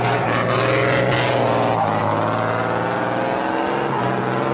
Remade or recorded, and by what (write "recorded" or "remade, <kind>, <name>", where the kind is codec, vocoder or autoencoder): recorded